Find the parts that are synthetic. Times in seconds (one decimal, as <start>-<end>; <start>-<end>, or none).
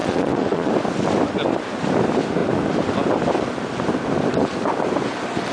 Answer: 0.0-0.7